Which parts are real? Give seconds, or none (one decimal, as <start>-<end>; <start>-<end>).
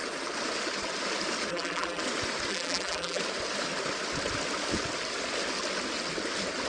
0.0-1.5; 2.0-2.5; 3.2-6.7